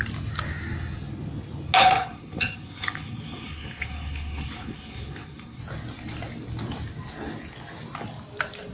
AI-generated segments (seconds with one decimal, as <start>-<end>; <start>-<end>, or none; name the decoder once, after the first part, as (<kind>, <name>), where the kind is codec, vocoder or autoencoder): 1.8-5.6 (codec, HILCodec)